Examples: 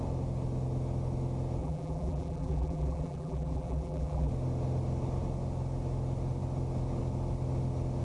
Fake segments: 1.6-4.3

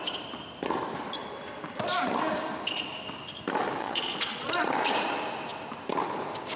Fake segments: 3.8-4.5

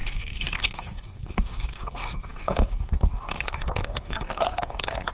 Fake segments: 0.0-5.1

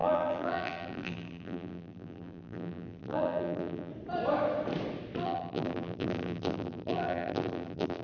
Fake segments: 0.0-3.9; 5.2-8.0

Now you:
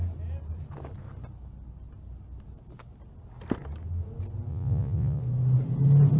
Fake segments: 4.5-5.2